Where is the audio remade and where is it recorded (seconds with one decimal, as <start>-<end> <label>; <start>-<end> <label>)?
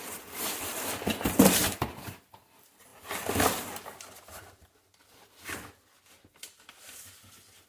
0.0-1.6 recorded; 1.6-2.3 remade; 2.3-7.7 recorded